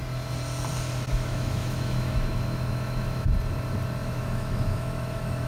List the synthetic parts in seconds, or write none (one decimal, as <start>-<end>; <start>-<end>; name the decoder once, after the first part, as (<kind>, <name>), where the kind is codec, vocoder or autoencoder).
1.1-3.3 (autoencoder, DAC-VAE); 4.0-5.5